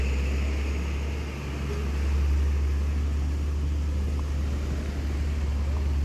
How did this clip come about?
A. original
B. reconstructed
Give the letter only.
A